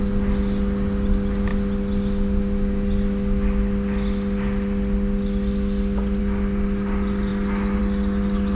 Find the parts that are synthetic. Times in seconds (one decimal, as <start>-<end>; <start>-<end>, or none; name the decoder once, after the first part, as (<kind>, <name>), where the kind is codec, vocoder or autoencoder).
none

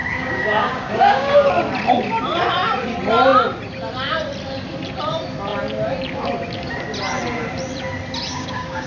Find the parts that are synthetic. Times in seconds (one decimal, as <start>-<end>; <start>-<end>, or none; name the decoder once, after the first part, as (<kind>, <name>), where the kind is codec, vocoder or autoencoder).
0.0-1.5 (codec, DAC); 8.3-8.9

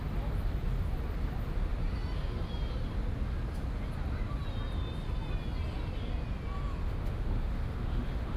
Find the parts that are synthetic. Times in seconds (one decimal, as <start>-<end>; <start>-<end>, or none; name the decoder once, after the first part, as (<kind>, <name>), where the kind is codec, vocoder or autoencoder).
6.8-8.4 (autoencoder, DAC-VAE)

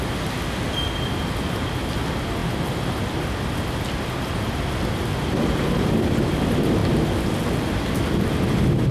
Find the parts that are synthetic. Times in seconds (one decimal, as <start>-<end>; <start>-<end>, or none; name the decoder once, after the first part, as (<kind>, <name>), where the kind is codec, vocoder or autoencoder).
none